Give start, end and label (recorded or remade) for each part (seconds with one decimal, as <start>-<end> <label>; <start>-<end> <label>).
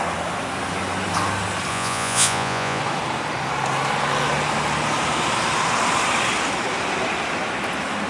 0.0-1.7 recorded; 1.7-2.8 remade; 2.8-8.1 recorded